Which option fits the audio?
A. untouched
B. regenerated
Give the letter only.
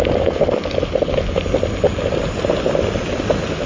A